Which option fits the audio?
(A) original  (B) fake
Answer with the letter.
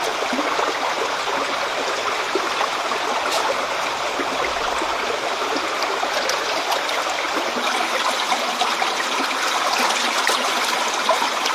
A